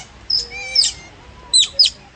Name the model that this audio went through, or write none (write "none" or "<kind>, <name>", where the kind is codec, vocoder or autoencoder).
none